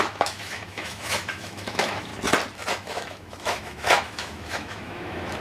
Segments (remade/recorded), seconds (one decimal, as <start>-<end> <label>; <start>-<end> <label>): 0.0-2.1 remade; 2.1-2.7 recorded; 2.7-5.4 remade